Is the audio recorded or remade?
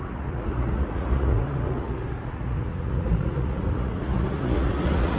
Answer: remade